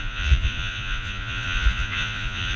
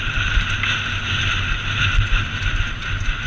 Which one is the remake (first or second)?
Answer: first